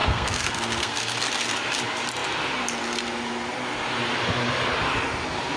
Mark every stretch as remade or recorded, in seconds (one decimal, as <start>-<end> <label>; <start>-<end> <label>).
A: 0.0-1.2 remade; 1.2-5.6 recorded